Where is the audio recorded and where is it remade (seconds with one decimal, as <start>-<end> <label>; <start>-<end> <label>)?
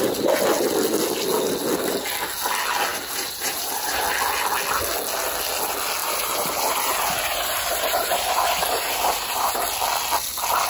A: 0.0-2.9 recorded; 2.9-4.0 remade; 4.0-6.0 recorded; 6.0-9.6 remade; 9.6-10.7 recorded